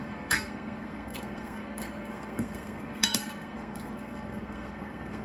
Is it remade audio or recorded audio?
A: remade